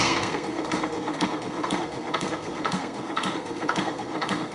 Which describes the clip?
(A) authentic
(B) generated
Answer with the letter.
B